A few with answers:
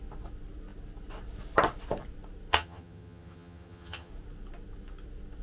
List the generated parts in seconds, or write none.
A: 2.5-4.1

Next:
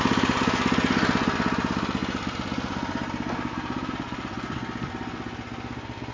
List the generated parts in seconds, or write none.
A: none

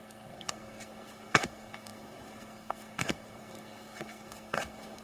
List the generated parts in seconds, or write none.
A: 0.0-5.0

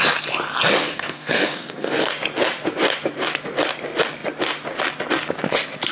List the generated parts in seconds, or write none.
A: 0.8-2.1

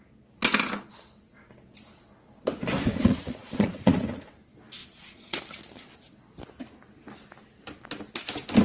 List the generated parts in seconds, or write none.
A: 2.9-4.3; 4.8-5.4

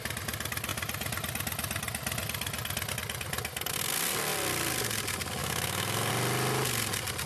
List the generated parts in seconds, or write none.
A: 5.4-6.1

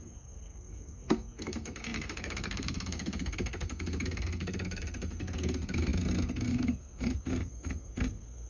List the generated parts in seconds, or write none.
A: 0.0-8.5

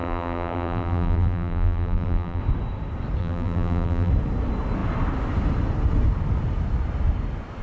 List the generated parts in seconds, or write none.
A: 0.0-2.4; 3.2-4.1